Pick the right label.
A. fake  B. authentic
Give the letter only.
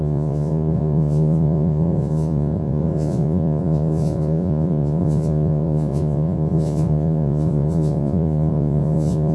A